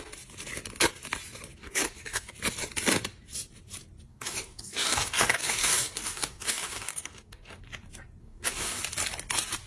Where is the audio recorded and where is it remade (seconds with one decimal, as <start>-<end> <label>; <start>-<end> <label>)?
0.0-1.6 recorded; 1.6-2.3 remade; 2.3-4.1 recorded; 4.1-7.6 remade; 7.6-8.2 recorded; 8.2-8.8 remade; 8.8-9.7 recorded